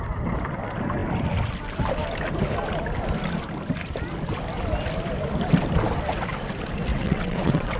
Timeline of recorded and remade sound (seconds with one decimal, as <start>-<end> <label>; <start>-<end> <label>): 0.0-6.9 recorded; 6.9-7.8 remade